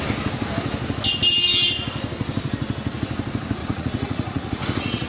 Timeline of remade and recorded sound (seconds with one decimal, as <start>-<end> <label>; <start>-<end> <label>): 0.0-3.6 recorded; 3.6-5.1 remade